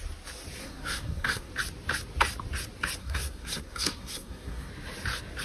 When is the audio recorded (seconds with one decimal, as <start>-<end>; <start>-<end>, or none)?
0.0-0.6; 1.5-3.0; 4.7-5.4